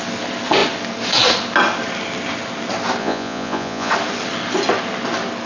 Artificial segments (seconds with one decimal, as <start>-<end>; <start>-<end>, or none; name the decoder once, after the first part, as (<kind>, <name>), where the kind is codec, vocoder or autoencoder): 3.0-3.9 (vocoder, Vocos)